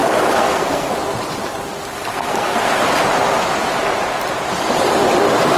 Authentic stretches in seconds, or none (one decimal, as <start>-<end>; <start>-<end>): 0.9-2.1; 2.8-5.6